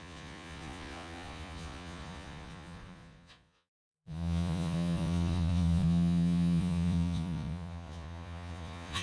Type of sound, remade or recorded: remade